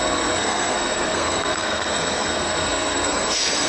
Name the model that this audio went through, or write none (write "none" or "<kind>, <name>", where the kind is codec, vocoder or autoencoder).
codec, SNAC